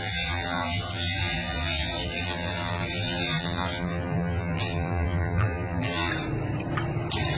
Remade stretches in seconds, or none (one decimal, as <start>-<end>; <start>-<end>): 0.0-6.1